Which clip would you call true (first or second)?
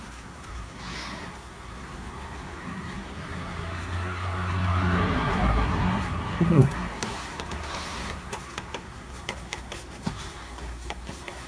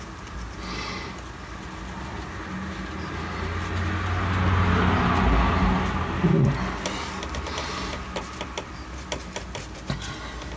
second